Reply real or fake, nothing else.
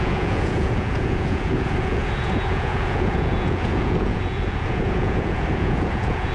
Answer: fake